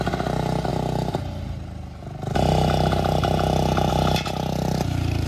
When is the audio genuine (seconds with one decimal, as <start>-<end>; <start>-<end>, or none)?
0.0-5.3